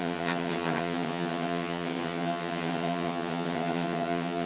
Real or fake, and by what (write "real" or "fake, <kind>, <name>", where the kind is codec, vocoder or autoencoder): fake, vocoder, HiFi-GAN